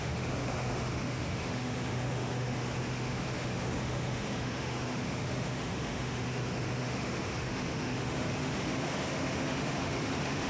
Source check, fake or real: fake